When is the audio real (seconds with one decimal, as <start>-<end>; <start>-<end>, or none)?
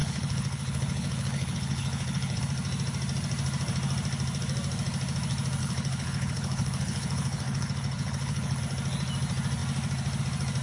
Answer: 2.4-5.6; 8.6-10.6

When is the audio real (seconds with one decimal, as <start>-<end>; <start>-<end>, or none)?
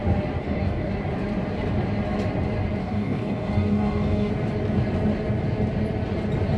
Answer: 0.0-0.4; 0.9-2.8; 4.3-6.6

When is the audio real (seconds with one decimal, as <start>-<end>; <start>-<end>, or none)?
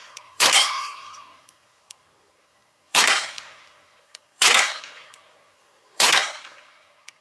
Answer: none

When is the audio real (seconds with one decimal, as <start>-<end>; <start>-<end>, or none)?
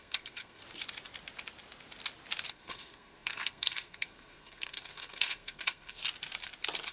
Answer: 0.6-2.5; 6.0-6.9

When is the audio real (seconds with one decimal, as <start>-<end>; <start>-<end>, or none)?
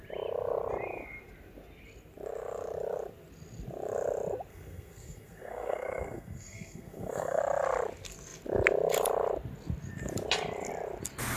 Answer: 0.0-4.5; 7.4-11.4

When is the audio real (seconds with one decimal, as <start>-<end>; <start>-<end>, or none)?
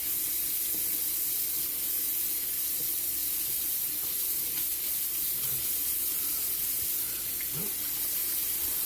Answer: 0.0-8.9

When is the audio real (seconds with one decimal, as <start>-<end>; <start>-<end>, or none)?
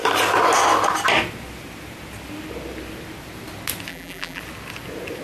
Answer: 0.0-3.9; 4.4-5.2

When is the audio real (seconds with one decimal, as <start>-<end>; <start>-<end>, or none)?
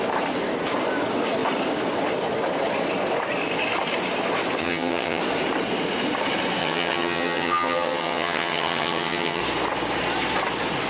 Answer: 0.0-4.6; 5.2-6.6; 9.4-10.9